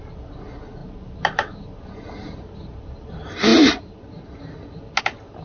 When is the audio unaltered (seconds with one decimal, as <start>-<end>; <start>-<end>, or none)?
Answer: 0.0-5.4